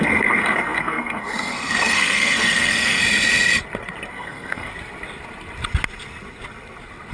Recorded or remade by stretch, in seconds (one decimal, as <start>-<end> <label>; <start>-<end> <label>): 0.0-3.0 remade; 3.0-4.1 recorded; 4.1-4.7 remade; 4.7-7.1 recorded